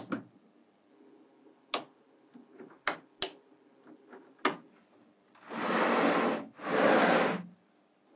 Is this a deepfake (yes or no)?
no